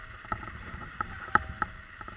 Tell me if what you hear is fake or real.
real